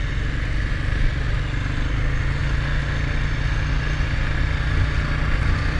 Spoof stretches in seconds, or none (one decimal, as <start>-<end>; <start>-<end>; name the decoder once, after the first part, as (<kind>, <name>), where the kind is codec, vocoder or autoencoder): none